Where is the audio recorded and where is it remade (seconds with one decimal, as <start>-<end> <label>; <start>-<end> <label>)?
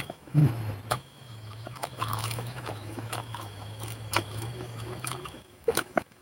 0.0-0.4 remade; 0.4-0.9 recorded; 0.9-6.2 remade